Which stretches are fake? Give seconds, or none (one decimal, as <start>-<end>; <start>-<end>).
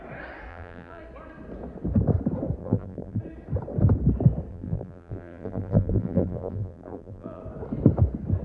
0.5-1.0; 2.6-3.2; 4.5-7.4